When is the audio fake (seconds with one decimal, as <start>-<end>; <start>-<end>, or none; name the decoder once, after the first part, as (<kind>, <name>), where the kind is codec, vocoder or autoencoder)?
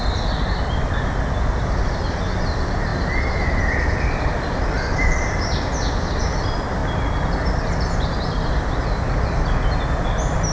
none